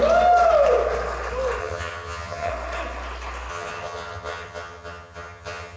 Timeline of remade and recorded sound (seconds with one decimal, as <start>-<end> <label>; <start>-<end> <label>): 0.0-1.6 recorded; 1.6-2.5 remade; 2.5-3.5 recorded; 3.5-5.8 remade